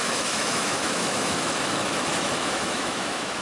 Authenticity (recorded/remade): remade